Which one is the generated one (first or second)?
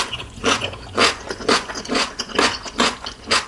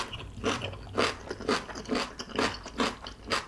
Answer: first